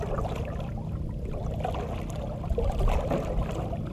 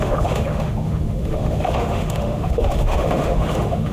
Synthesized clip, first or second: second